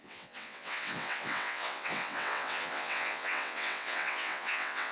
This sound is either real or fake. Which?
fake